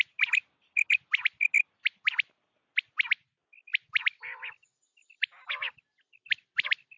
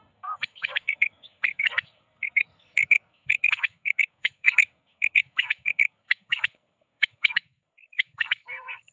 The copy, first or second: second